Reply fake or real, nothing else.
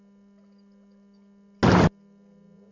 real